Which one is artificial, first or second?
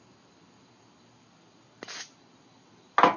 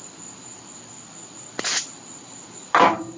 second